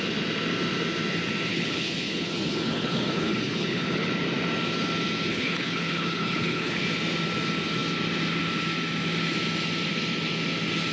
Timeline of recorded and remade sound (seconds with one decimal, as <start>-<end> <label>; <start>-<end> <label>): 0.0-1.5 recorded; 1.5-4.1 remade; 4.1-5.3 recorded; 5.3-6.8 remade; 6.8-10.9 recorded